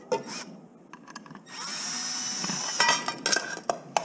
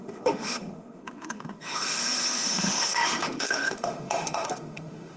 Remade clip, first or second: second